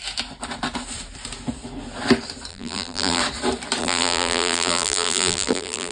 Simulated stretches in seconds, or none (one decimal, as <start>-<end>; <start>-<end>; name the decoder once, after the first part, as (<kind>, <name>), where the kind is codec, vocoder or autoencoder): 2.5-3.2 (vocoder, BigVGAN v2); 3.8-5.9